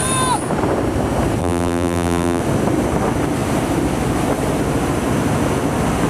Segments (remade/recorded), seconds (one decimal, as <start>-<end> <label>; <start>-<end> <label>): 0.0-1.4 recorded; 1.4-2.4 remade; 2.4-6.1 recorded